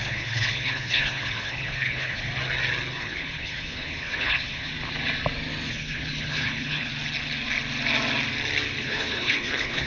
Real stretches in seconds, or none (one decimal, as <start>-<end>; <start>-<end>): 2.3-3.0; 4.7-5.7; 6.9-8.8

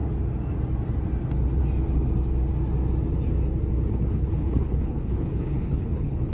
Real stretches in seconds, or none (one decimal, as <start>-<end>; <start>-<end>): 0.0-3.9

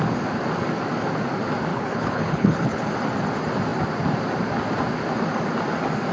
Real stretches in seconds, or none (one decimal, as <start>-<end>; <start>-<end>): 0.0-1.7; 2.9-6.1

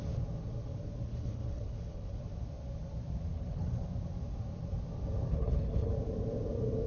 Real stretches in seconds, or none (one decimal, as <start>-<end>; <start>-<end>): 0.0-1.1; 2.2-3.3; 3.9-5.3; 5.9-6.9

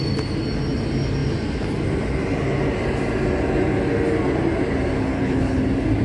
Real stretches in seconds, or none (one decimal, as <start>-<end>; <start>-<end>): 0.0-4.9; 5.6-6.0